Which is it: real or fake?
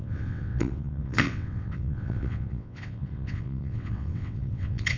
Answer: fake